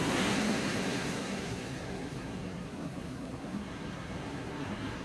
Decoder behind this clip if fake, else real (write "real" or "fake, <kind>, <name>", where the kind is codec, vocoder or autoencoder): fake, codec, SNAC